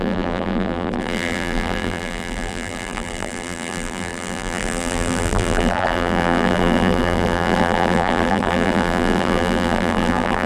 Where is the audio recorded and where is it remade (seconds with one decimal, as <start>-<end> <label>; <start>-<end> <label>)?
0.0-10.5 remade

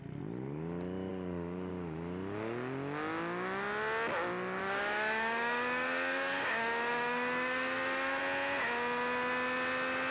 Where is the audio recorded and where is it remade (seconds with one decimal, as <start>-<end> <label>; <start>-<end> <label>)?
0.0-1.1 recorded; 1.1-1.7 remade; 1.7-4.6 recorded; 4.6-8.2 remade; 8.2-10.1 recorded